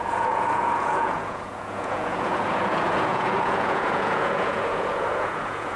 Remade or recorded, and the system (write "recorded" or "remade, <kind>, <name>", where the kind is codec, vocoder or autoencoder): remade, vocoder, Vocos